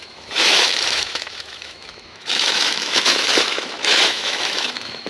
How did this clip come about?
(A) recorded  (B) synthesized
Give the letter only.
B